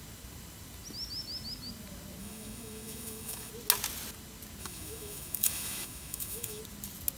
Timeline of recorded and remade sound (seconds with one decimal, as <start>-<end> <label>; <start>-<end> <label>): 0.0-2.2 recorded; 2.2-3.5 remade; 3.5-4.6 recorded; 4.6-6.6 remade; 6.6-7.2 recorded

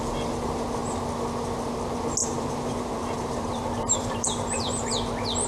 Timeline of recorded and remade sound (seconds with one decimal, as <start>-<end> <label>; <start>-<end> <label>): 0.0-2.2 recorded; 2.2-4.9 remade; 4.9-5.5 recorded

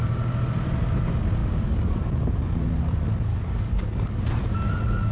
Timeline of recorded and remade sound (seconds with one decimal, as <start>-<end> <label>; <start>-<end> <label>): 0.0-1.4 recorded; 1.4-2.0 remade; 2.0-3.3 recorded; 3.3-4.2 remade; 4.2-5.1 recorded

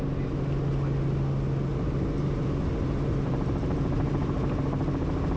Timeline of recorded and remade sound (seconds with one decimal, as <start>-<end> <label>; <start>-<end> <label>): 0.0-1.7 recorded; 1.7-4.9 remade; 4.9-5.4 recorded

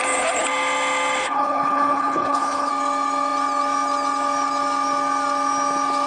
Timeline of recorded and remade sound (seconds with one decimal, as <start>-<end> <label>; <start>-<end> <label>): 0.0-1.2 recorded; 1.2-2.7 remade; 2.7-6.1 recorded

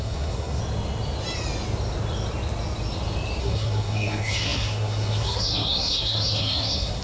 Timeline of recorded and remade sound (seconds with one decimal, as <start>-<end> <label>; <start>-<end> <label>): 0.0-0.6 remade; 0.6-3.4 recorded; 3.4-7.0 remade